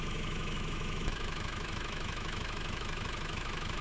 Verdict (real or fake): fake